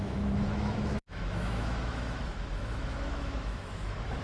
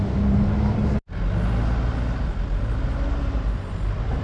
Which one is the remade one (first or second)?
first